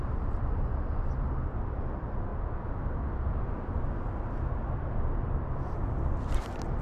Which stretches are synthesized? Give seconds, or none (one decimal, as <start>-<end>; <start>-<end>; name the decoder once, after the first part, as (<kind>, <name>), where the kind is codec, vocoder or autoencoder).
none